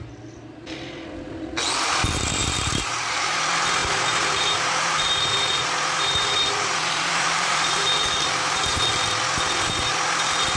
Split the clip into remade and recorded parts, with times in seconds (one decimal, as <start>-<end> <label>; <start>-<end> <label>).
0.0-2.4 recorded; 2.4-3.4 remade; 3.4-3.8 recorded; 3.8-8.8 remade; 8.8-10.6 recorded